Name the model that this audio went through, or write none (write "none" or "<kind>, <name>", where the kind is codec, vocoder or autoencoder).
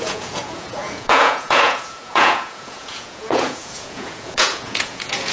vocoder, Vocos